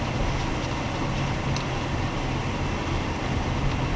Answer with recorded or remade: recorded